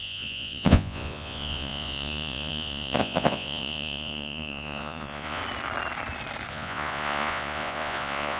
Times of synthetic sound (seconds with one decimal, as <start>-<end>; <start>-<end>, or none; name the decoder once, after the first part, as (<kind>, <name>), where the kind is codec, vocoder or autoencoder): 0.0-5.4 (vocoder, Vocos); 6.5-8.4